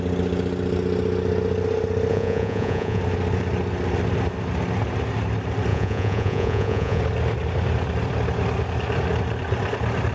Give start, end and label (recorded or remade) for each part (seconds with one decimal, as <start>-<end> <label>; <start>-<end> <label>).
0.0-2.1 recorded; 2.1-3.0 remade; 3.0-5.7 recorded; 5.7-7.0 remade; 7.0-10.1 recorded